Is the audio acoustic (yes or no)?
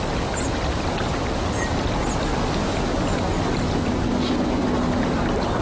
yes